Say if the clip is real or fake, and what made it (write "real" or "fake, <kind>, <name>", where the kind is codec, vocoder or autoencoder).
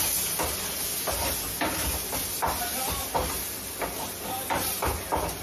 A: real